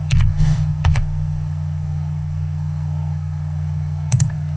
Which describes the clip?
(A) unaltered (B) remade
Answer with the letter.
B